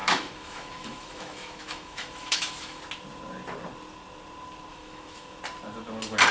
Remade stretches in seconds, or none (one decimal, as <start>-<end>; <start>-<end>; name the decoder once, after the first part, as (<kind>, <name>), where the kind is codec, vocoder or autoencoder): 0.0-2.8 (autoencoder, DAC-VAE); 4.7-5.4